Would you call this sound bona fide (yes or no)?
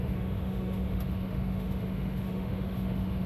no